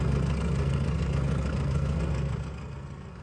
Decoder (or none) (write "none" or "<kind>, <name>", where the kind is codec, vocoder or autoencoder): codec, SNAC